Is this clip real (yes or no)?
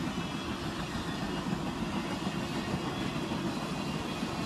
yes